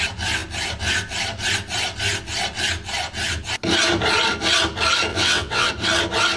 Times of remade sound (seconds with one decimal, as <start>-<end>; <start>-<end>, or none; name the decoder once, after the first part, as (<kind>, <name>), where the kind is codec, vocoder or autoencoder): 5.1-5.7 (vocoder, WaveNeXt)